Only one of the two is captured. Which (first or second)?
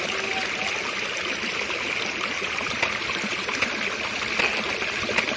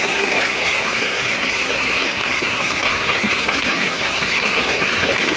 first